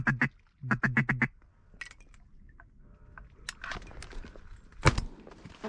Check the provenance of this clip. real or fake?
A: real